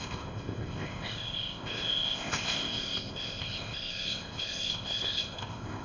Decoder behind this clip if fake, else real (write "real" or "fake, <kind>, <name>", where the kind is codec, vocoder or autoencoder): fake, codec, ZipCodec